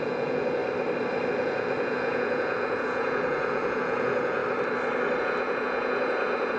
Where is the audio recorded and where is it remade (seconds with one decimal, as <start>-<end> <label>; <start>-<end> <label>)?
0.0-0.6 remade; 0.6-1.3 recorded; 1.3-4.4 remade; 4.4-5.2 recorded; 5.2-6.6 remade

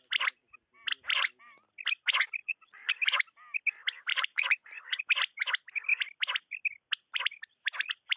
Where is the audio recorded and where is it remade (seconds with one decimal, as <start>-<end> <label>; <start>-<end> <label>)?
0.0-2.4 recorded; 2.4-2.9 remade; 2.9-4.1 recorded; 4.1-5.0 remade; 5.0-8.2 recorded

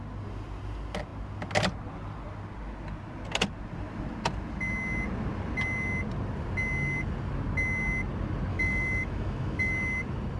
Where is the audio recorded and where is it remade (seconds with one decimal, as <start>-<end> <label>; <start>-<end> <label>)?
0.0-8.5 recorded; 8.5-9.7 remade; 9.7-10.4 recorded

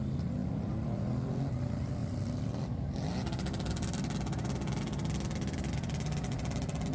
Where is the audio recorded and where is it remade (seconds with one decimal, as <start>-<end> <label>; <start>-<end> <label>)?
0.0-6.9 recorded

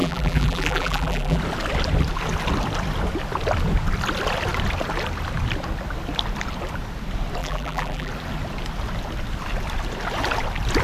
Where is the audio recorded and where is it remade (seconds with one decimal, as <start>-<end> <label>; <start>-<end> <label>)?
0.0-1.4 remade; 1.4-7.4 recorded; 7.4-8.1 remade; 8.1-10.8 recorded